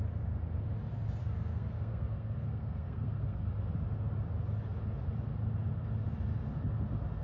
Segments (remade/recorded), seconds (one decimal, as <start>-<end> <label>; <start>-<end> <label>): 0.0-1.2 recorded; 1.2-3.5 remade; 3.5-7.2 recorded